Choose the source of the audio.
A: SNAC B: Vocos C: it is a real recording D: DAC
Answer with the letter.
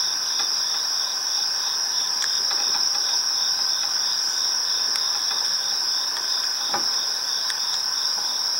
C